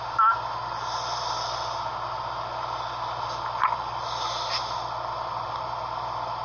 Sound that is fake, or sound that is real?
real